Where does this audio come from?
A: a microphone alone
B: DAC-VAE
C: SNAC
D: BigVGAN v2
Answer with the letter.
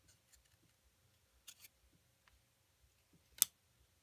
A